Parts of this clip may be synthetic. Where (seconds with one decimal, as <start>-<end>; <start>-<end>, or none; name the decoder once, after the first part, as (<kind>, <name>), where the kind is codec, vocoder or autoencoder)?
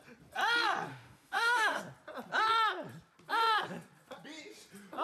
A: 0.9-1.8 (autoencoder, DAC-VAE)